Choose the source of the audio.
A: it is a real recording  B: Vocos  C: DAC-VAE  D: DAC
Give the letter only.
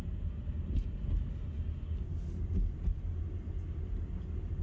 A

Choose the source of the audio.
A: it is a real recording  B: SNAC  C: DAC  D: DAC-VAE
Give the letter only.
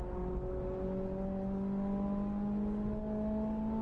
A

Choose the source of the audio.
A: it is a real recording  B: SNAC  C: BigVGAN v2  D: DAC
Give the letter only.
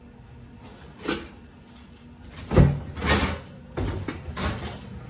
A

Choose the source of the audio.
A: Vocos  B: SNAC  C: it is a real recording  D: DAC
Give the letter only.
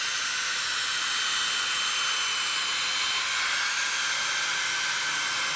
C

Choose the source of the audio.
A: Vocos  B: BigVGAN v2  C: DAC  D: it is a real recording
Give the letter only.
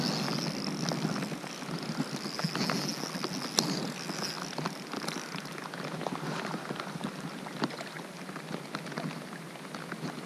D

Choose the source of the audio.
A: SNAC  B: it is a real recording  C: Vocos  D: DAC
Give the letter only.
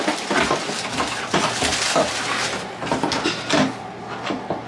B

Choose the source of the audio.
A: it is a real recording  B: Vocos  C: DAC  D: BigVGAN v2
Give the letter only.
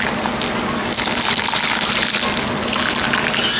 A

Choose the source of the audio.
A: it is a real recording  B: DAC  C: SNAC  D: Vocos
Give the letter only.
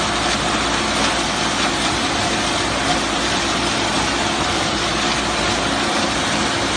A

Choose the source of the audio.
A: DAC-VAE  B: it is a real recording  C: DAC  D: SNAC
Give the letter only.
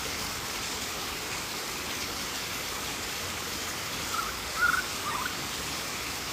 C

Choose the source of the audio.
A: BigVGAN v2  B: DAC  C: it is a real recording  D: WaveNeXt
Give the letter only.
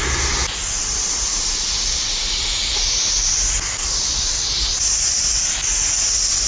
C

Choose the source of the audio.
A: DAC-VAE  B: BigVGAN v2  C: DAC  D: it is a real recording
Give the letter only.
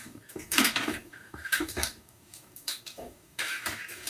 C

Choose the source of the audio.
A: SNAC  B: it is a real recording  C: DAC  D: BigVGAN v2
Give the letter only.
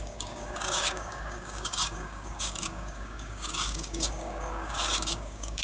C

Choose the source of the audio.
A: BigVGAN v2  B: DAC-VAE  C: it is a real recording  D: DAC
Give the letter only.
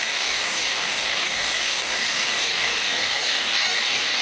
D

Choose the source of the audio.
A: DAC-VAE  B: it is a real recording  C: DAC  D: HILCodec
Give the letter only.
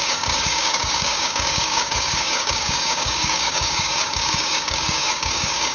C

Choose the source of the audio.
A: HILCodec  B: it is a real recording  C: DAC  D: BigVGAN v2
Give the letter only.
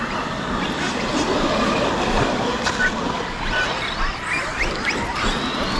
B